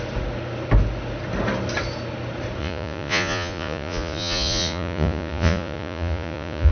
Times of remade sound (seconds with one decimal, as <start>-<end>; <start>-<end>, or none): 2.6-6.7